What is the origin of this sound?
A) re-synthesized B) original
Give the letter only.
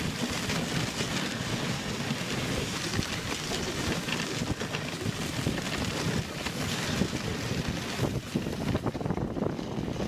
B